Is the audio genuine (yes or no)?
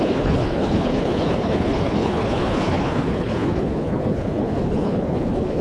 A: no